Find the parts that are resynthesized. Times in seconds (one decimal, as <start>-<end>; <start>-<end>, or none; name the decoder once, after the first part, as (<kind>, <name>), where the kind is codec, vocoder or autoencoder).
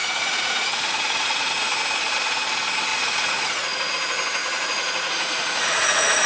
0.0-1.8 (vocoder, Vocos); 2.9-3.9; 4.4-6.3